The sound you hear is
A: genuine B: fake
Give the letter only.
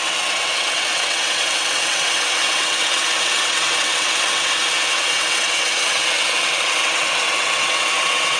B